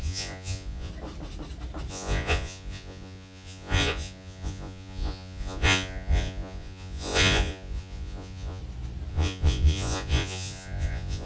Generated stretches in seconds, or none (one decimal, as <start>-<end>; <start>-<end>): 0.0-0.9; 1.9-8.6; 9.1-11.3